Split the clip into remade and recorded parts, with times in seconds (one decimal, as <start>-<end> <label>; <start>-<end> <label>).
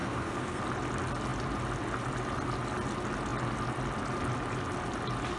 0.0-0.6 remade; 0.6-5.4 recorded